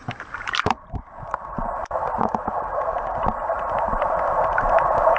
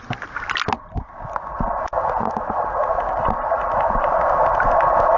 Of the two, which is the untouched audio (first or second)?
second